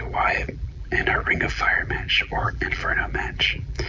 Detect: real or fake fake